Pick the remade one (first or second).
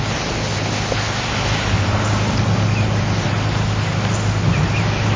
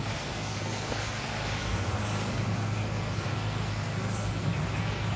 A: second